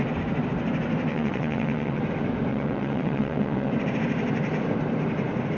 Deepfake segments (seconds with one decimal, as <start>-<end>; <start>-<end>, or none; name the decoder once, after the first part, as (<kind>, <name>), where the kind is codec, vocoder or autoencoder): 1.1-2.0 (vocoder, WaveNeXt); 2.5-3.7